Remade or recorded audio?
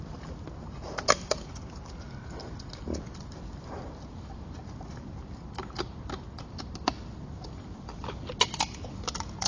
recorded